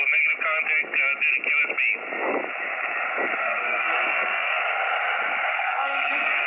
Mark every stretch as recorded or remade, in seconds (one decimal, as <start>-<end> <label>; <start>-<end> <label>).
0.0-3.4 recorded; 3.4-4.6 remade; 4.6-5.5 recorded; 5.5-6.5 remade